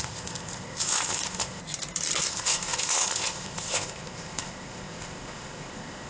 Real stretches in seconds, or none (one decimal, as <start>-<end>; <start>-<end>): 1.6-2.3